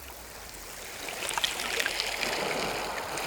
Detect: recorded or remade recorded